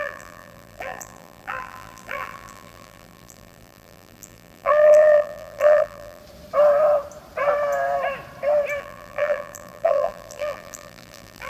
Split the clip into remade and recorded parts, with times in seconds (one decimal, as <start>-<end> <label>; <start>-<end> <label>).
0.0-6.2 remade; 6.2-8.8 recorded; 8.8-11.5 remade